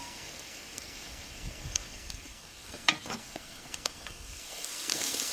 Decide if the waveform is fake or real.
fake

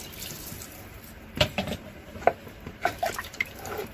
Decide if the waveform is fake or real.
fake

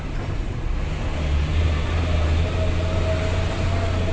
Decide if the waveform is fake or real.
real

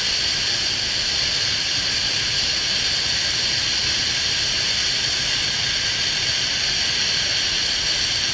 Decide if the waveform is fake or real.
real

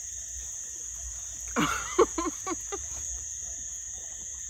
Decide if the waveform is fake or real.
real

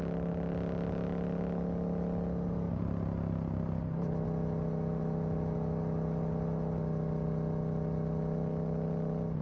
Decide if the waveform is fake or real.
real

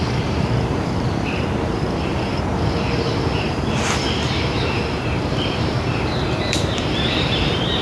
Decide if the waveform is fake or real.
fake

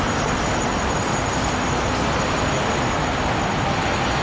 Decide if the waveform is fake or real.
real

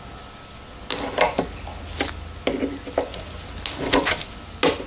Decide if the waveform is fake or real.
real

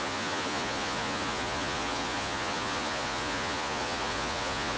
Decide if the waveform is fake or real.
fake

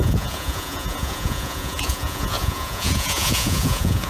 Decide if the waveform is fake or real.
fake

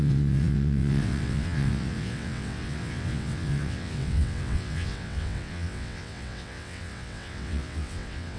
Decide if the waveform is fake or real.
fake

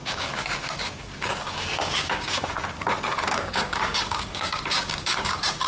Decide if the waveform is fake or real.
fake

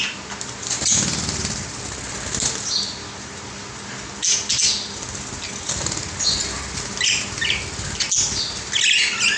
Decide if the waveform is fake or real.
real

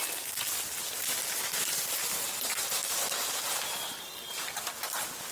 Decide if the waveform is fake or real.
real